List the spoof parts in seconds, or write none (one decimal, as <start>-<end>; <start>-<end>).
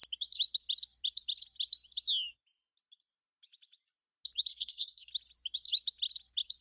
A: 4.5-5.1